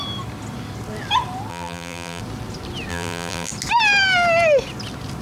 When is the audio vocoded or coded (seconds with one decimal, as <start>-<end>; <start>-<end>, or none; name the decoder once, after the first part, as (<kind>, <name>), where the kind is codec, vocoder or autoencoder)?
1.5-2.2 (vocoder, BigVGAN v2); 2.9-3.5